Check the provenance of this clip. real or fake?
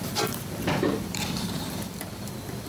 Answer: fake